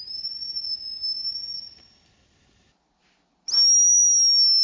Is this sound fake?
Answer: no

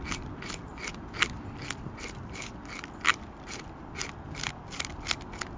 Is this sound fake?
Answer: no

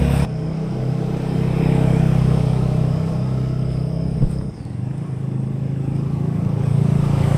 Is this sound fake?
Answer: yes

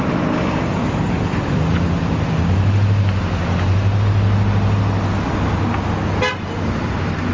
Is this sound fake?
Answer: no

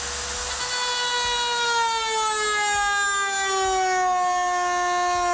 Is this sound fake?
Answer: no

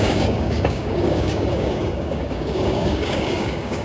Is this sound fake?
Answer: yes